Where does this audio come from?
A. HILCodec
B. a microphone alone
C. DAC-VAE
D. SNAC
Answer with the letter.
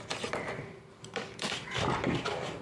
B